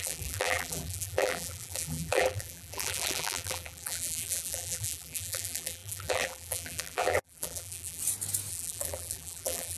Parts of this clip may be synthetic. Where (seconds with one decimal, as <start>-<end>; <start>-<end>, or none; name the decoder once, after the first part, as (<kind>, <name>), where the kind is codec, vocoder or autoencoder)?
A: 0.0-8.0 (vocoder, BigVGAN v2); 8.5-9.8